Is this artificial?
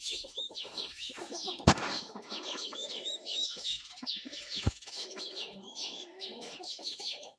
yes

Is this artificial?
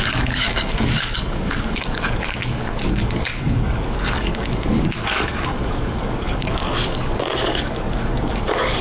yes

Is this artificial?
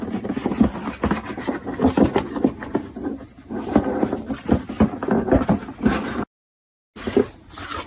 no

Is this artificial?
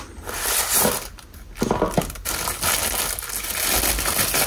no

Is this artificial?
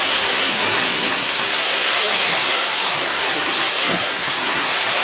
yes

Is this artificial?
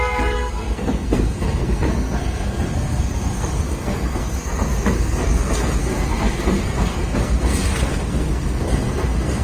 yes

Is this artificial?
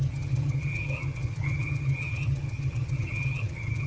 yes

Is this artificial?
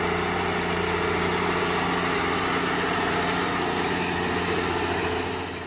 no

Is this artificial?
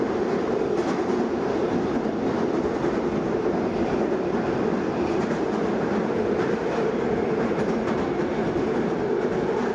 no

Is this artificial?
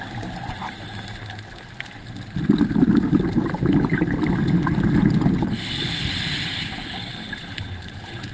no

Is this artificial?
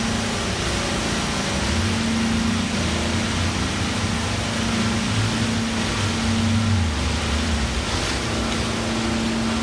no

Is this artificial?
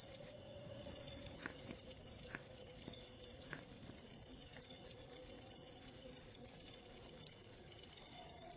yes